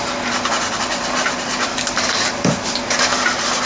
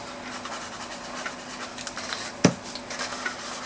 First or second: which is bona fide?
second